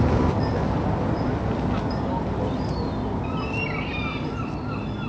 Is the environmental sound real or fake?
real